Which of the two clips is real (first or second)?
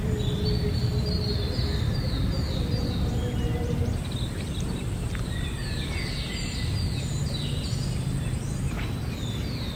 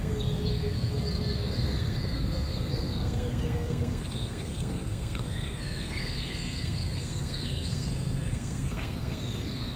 first